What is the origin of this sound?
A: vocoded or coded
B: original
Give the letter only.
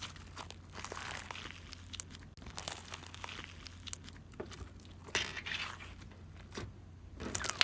B